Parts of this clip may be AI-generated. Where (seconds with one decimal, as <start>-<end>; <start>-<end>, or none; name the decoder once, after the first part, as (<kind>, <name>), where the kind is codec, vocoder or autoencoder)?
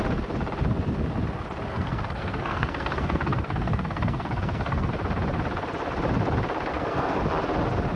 1.7-4.9 (codec, SNAC); 6.7-7.2